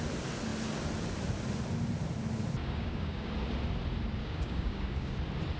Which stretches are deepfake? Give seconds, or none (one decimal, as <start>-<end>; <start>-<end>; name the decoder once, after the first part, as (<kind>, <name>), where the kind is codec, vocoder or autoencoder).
2.6-3.3 (codec, DAC); 4.2-5.1